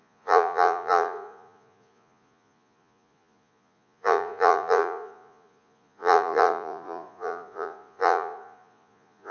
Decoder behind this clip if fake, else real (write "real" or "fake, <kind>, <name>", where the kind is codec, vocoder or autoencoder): fake, vocoder, Vocos